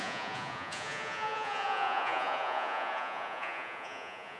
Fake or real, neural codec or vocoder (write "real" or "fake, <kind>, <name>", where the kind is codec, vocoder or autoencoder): fake, vocoder, Vocos